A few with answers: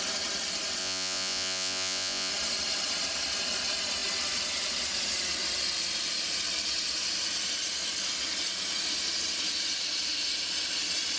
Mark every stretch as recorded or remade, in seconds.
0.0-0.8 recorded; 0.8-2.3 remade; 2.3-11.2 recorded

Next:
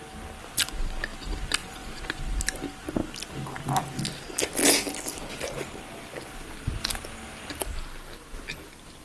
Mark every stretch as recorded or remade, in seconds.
0.0-1.6 recorded; 1.6-2.2 remade; 2.2-9.0 recorded